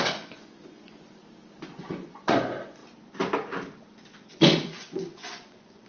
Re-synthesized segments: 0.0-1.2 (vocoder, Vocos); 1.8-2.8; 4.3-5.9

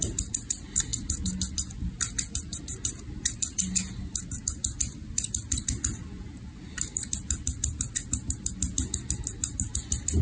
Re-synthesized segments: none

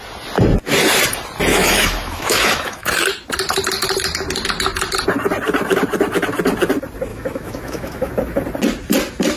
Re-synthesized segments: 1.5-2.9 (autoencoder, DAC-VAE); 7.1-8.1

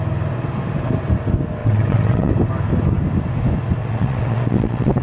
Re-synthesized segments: 1.6-2.3 (vocoder, WaveNeXt); 3.8-5.0